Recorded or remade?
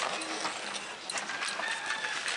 recorded